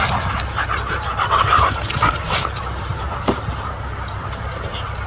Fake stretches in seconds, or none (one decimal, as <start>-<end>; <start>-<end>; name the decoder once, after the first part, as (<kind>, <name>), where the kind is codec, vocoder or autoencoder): 1.1-3.4 (vocoder, BigVGAN v2)

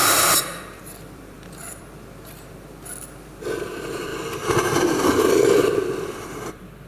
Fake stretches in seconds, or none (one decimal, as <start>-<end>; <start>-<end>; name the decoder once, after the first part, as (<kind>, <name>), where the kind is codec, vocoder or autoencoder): 0.0-6.9 (vocoder, BigVGAN v2)

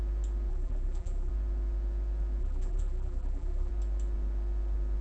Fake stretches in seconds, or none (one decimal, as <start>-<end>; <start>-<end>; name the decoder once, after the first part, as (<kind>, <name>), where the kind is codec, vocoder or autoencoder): 0.5-1.3 (vocoder, BigVGAN v2); 2.4-3.7

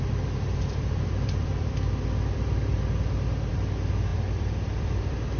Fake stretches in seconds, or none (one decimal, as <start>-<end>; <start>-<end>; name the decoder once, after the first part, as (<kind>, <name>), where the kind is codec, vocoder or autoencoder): 0.0-2.7 (vocoder, BigVGAN v2); 3.5-5.4

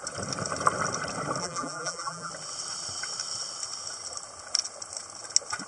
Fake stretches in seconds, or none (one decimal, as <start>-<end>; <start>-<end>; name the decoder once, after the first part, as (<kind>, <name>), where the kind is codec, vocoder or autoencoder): 1.4-2.3 (vocoder, BigVGAN v2)